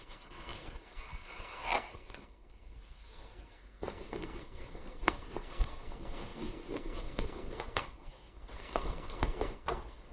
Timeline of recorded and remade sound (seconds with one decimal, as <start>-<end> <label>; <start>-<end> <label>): 0.0-10.1 remade